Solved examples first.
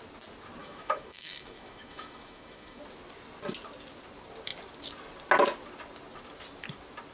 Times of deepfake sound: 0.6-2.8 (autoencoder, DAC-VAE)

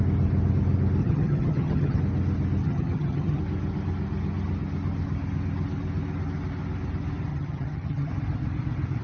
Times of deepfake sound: 1.0-2.0 (vocoder, HiFi-GAN); 2.6-3.4; 7.3-8.1

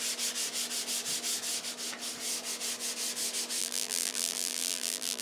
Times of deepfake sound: 3.6-5.2 (vocoder, BigVGAN v2)

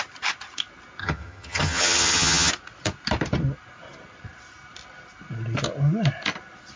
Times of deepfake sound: 1.0-2.5 (vocoder, HiFi-GAN)

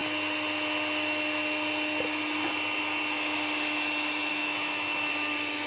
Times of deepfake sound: 4.3-5.1 (autoencoder, DAC-VAE)

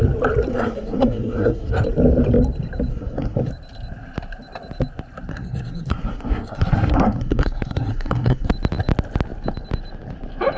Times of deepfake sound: 0.5-1.7 (codec, SNAC); 2.9-3.5; 5.3-8.5

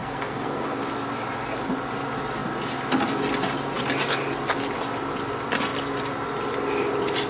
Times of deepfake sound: 0.0-0.8 (codec, SNAC)